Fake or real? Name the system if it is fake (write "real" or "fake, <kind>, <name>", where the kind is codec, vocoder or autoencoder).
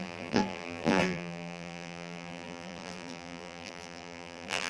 fake, vocoder, BigVGAN v2